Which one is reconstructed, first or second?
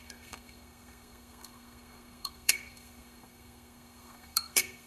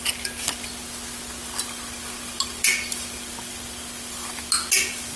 first